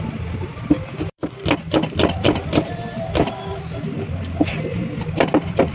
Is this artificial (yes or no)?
yes